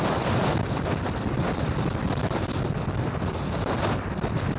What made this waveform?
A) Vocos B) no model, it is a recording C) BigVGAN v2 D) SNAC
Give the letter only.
B